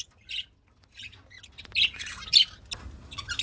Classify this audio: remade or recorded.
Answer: recorded